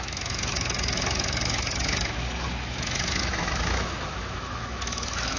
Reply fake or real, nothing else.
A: fake